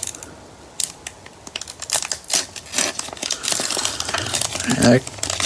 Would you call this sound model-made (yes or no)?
no